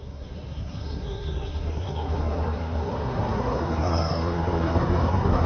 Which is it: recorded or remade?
remade